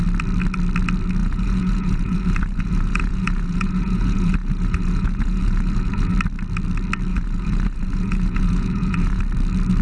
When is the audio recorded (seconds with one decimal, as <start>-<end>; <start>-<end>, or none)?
0.0-1.2; 6.1-7.1; 9.2-9.8